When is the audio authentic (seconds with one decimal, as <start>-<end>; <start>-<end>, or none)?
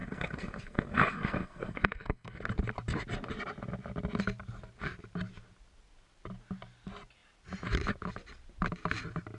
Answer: 2.4-9.4